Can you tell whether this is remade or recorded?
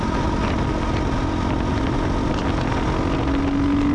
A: recorded